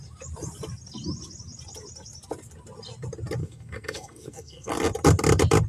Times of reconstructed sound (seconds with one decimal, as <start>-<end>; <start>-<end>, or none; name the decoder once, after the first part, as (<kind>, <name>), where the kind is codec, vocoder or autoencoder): 3.4-4.7 (codec, SNAC)